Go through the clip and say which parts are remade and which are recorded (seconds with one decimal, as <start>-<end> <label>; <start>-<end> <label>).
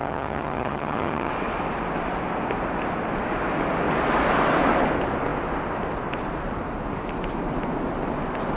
0.0-1.3 remade; 1.3-8.6 recorded